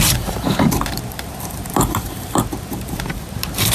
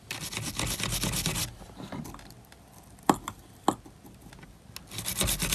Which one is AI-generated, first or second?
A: first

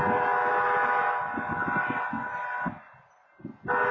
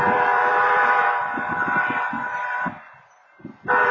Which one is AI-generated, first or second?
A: second